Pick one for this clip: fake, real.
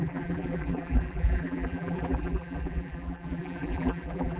fake